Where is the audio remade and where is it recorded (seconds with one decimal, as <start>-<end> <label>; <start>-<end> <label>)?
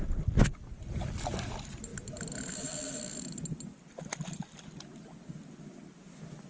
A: 0.0-6.5 recorded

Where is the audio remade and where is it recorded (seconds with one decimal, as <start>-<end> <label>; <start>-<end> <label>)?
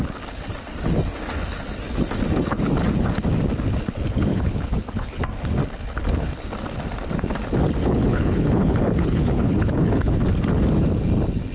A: 0.0-4.3 recorded; 4.3-5.2 remade; 5.2-7.8 recorded; 7.8-10.2 remade; 10.2-11.5 recorded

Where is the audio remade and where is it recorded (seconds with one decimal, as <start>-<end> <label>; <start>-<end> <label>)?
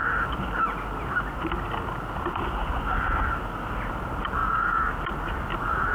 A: 0.0-4.4 recorded; 4.4-4.9 remade; 4.9-5.9 recorded